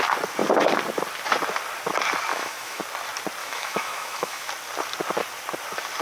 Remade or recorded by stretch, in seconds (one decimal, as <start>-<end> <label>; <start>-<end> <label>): 0.0-2.3 recorded; 2.3-2.8 remade; 2.8-3.4 recorded; 3.4-4.5 remade; 4.5-6.0 recorded